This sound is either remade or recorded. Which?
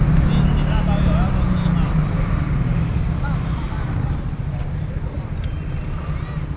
recorded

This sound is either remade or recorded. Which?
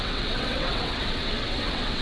remade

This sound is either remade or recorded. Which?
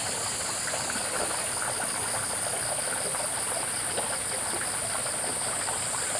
recorded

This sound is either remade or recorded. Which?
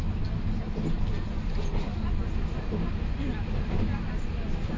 recorded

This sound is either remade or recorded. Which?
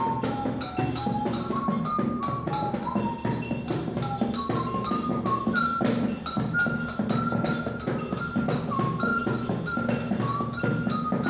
recorded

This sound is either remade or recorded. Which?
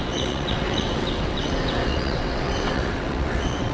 remade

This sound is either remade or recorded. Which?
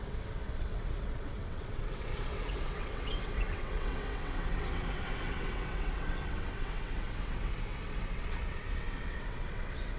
remade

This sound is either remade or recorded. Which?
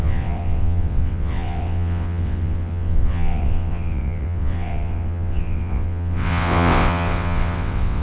remade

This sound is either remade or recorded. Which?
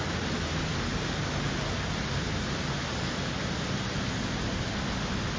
recorded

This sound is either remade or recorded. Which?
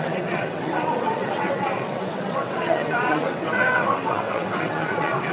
remade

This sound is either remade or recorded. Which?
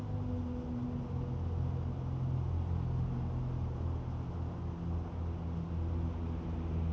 recorded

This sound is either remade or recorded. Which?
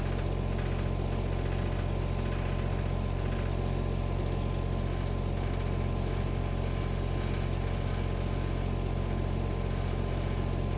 recorded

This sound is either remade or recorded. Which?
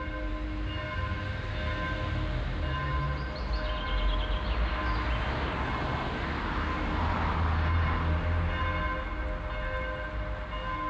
recorded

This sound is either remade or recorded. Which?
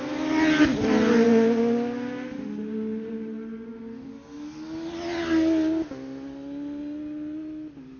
recorded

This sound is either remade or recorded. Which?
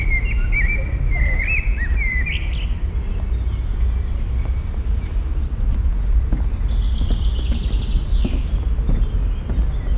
recorded